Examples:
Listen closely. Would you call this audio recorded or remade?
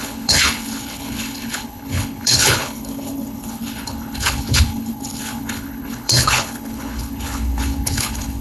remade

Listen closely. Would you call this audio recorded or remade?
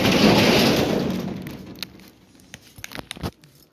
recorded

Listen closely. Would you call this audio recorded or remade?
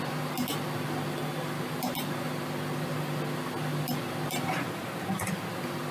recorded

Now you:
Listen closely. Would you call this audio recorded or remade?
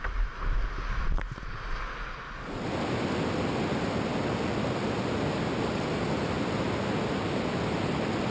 recorded